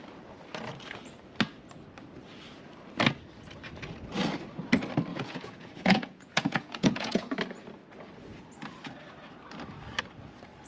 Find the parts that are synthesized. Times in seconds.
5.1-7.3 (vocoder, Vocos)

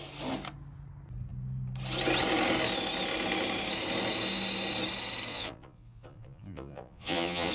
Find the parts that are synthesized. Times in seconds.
5.3-7.5 (vocoder, Vocos)

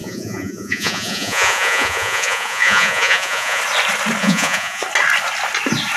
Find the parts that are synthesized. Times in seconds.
0.0-3.6 (vocoder, Vocos); 4.2-4.8

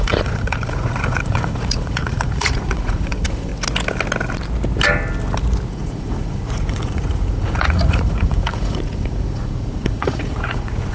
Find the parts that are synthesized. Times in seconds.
0.0-3.5 (vocoder, Vocos); 5.7-10.9

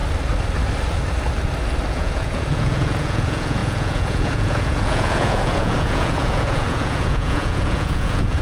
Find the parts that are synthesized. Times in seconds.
1.9-8.4 (vocoder, Vocos)

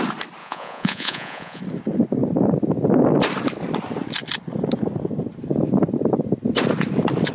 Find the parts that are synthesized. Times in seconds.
0.4-1.6 (vocoder, Vocos)